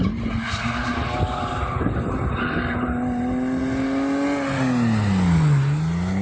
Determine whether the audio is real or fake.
real